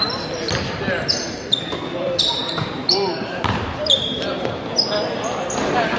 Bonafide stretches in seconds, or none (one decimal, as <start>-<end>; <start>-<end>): 0.0-1.9; 5.2-6.0